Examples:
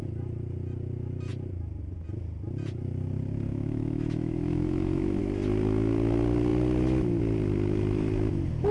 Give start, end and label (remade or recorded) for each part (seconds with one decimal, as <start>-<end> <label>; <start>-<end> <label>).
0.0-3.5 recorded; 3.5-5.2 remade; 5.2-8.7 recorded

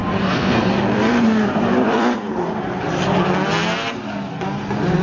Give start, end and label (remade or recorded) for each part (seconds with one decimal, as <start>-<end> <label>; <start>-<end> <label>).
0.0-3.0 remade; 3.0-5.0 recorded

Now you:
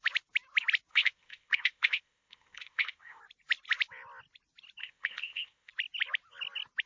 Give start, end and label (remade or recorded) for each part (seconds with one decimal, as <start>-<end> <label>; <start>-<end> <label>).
0.0-0.9 recorded; 0.9-3.2 remade; 3.2-4.8 recorded; 4.8-5.7 remade; 5.7-6.9 recorded

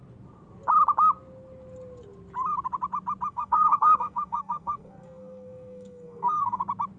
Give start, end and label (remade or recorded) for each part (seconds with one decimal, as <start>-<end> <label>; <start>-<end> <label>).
0.0-3.3 recorded; 3.3-6.6 remade; 6.6-7.0 recorded

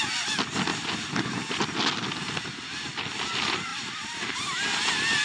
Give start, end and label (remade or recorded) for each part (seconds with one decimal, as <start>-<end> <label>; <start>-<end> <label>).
0.0-0.7 recorded; 0.7-1.6 remade; 1.6-3.7 recorded; 3.7-5.2 remade